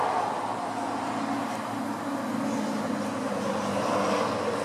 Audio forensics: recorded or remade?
recorded